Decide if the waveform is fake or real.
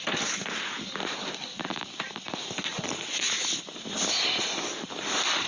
real